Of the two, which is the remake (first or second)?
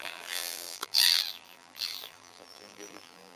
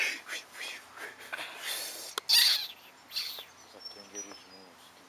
first